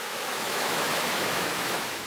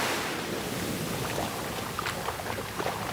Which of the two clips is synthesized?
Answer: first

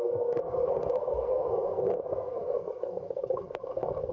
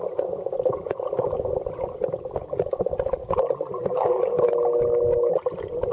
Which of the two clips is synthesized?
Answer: first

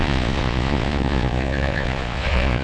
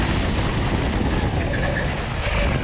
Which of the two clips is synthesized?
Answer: first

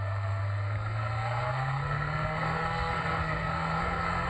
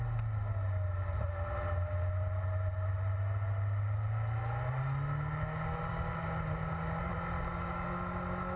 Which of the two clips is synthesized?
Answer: first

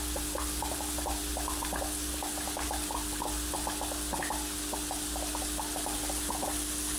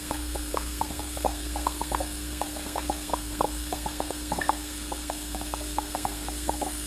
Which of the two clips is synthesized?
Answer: second